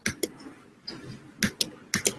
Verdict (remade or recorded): recorded